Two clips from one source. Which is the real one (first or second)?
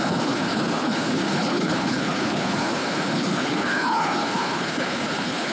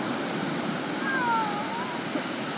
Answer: second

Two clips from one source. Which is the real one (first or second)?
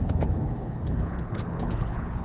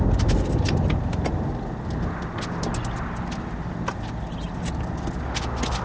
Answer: second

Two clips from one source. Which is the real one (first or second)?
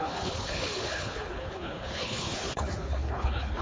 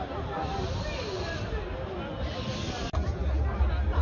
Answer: second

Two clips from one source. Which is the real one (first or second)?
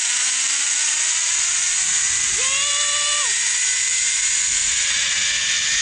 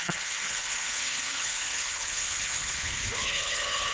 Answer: first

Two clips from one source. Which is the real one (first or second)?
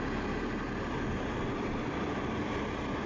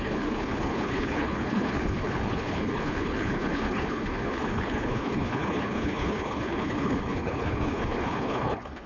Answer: first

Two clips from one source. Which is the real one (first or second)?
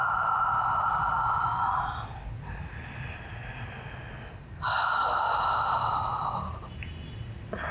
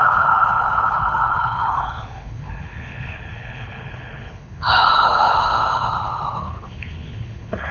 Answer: first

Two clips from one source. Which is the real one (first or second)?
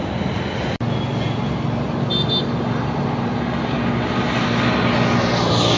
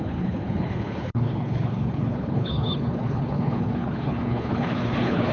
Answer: first